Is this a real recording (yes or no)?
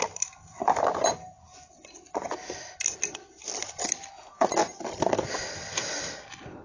yes